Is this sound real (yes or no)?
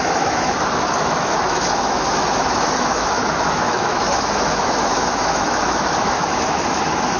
no